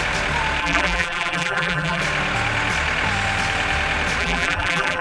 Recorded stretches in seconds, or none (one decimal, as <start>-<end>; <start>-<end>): 0.0-0.6; 2.0-4.2